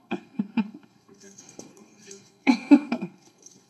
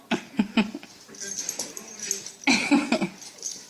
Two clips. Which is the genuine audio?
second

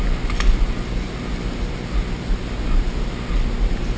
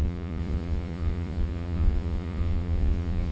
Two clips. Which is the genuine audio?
first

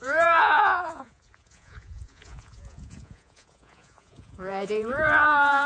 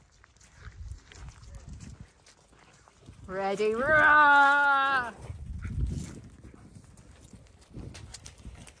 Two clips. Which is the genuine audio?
second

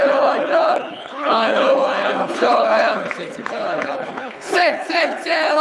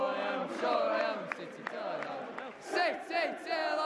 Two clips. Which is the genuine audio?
second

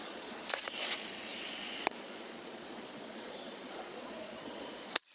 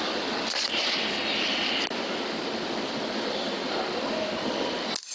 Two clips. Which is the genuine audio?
second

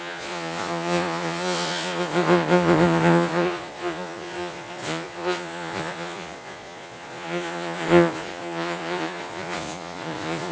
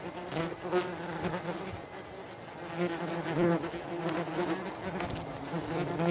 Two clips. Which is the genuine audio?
second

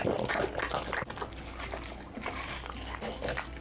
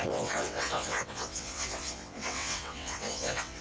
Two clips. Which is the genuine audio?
first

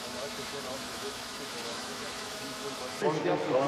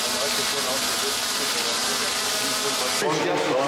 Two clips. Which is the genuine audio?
second